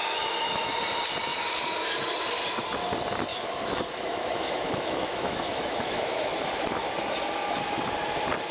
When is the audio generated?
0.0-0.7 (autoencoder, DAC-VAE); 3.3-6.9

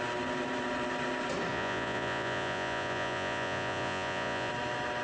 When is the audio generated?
1.5-4.5 (vocoder, Vocos)

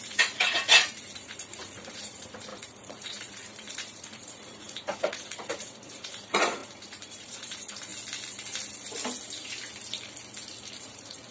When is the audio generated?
0.0-7.9 (vocoder, Vocos); 10.8-11.3

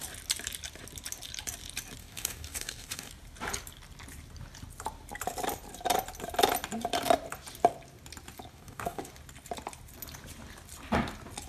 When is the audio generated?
2.0-3.1 (codec, DAC); 8.5-9.1